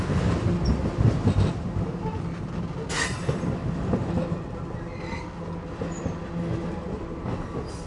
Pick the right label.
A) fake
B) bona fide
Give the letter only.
B